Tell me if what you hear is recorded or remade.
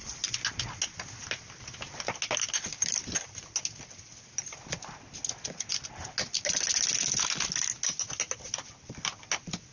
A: recorded